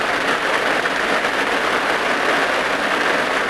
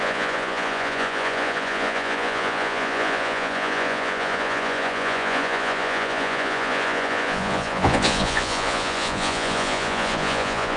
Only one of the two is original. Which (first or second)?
first